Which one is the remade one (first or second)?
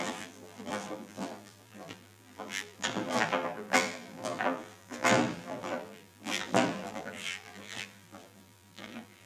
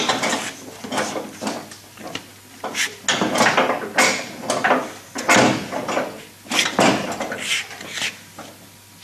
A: first